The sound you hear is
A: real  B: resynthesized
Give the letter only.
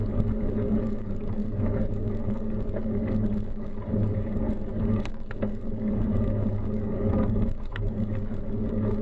B